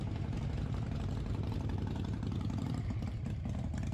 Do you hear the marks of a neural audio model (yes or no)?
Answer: yes